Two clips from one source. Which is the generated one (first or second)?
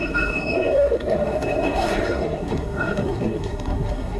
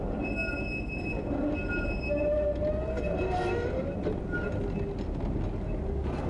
first